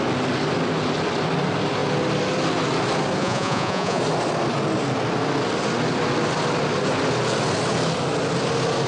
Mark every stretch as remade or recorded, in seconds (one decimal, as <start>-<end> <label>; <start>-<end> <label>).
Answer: 0.0-3.2 recorded; 3.2-4.0 remade; 4.0-8.9 recorded